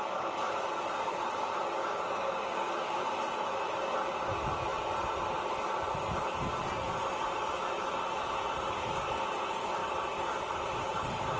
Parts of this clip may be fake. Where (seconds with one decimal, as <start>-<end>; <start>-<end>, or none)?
1.8-3.0